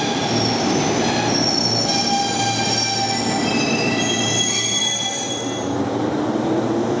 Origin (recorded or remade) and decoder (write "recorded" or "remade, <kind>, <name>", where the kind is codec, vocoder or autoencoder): recorded